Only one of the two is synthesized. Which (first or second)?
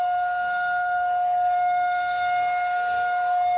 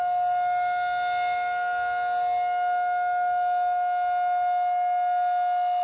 first